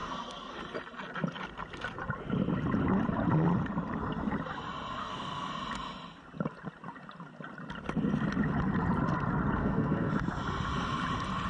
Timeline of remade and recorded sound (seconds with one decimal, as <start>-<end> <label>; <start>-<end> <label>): 0.0-0.6 remade; 0.6-5.0 recorded; 5.0-5.5 remade; 5.5-9.6 recorded; 9.6-10.1 remade; 10.1-11.5 recorded